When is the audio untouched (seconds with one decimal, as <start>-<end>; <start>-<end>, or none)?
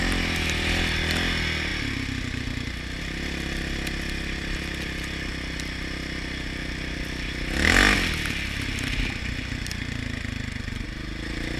0.0-11.6